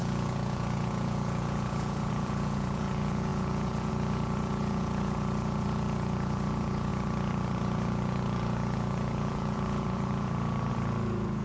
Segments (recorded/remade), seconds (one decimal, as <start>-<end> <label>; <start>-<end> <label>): 0.0-11.4 remade